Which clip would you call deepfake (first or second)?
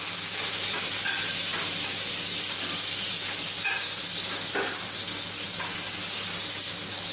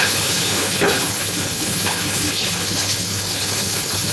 second